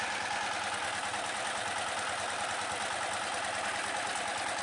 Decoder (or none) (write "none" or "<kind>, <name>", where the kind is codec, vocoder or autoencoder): none